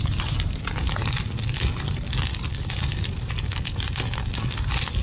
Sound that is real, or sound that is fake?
real